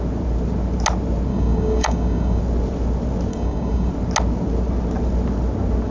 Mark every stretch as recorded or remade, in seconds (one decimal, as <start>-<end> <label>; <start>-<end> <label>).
0.0-1.3 recorded; 1.3-2.4 remade; 2.4-3.3 recorded; 3.3-3.9 remade; 3.9-5.9 recorded